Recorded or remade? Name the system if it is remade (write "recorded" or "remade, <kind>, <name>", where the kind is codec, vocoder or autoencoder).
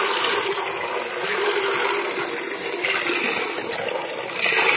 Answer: recorded